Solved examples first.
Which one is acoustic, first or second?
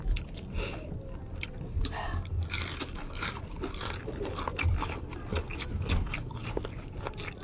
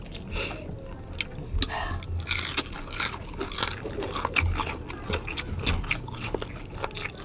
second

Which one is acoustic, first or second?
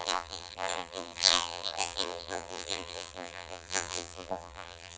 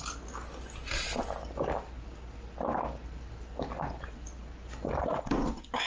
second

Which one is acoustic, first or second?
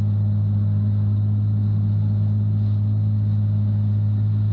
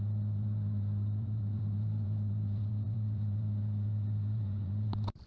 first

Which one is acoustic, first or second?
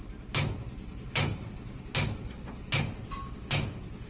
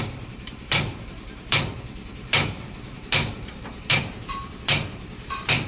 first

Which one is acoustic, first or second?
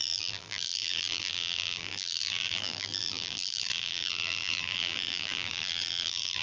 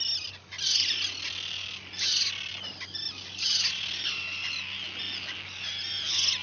second